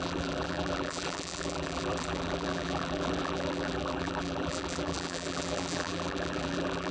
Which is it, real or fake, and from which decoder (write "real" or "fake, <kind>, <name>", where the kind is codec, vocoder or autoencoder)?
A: fake, vocoder, BigVGAN v2